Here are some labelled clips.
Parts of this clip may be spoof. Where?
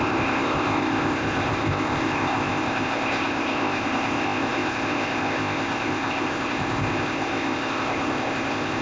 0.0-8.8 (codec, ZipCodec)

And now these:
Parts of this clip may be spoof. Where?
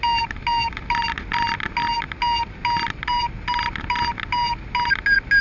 none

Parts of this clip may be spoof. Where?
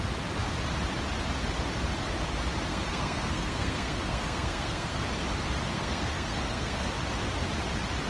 2.7-5.0 (codec, SNAC); 5.7-6.9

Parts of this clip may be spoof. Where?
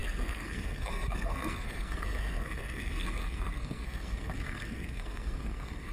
0.0-5.9 (codec, SNAC)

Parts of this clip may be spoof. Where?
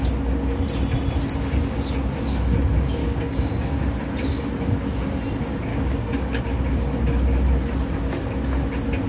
3.0-3.8 (codec, DAC); 5.7-6.4